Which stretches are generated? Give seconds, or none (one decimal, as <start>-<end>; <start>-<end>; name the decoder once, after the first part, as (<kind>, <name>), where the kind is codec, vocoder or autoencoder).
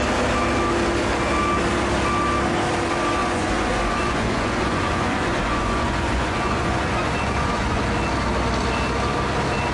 3.2-7.8 (vocoder, Vocos)